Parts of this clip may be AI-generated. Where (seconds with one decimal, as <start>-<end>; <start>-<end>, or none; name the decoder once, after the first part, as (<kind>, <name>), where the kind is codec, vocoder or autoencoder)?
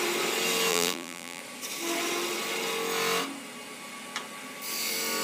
0.7-1.4 (vocoder, BigVGAN v2)